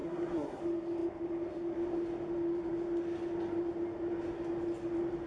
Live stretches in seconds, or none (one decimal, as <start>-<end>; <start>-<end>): 0.6-5.3